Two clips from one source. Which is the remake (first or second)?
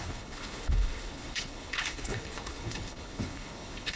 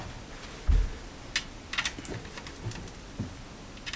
first